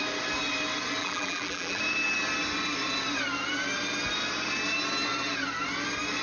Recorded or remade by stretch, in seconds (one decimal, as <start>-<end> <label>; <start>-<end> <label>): 0.0-1.0 recorded; 1.0-1.8 remade; 1.8-6.2 recorded